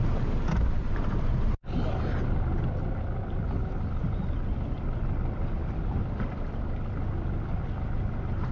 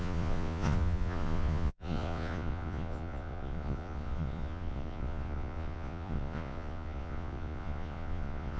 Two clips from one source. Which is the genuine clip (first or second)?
first